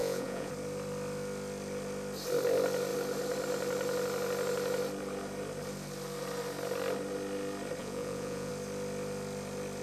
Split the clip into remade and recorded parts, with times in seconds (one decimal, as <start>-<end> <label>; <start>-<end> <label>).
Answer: 0.0-0.5 remade; 0.5-7.8 recorded; 7.8-8.5 remade; 8.5-9.8 recorded